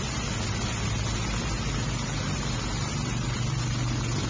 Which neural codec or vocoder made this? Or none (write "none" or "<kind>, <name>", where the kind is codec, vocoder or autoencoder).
none